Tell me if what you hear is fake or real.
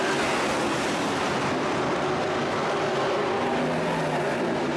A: real